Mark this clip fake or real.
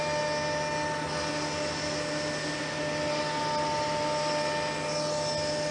real